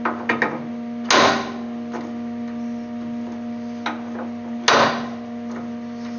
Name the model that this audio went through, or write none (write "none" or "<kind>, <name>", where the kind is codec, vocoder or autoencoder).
none